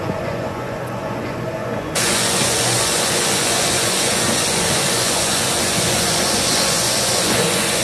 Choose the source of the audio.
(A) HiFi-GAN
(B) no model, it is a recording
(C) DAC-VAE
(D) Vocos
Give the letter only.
D